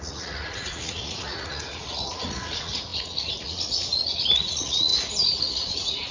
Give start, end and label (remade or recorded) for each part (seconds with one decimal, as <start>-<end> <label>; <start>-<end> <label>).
0.0-4.9 remade; 4.9-5.4 recorded; 5.4-6.1 remade